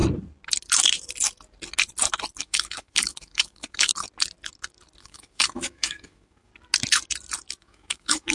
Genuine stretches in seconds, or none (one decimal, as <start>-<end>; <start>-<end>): 0.0-2.4; 3.9-5.0; 6.5-7.6